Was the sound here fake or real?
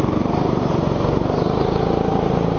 fake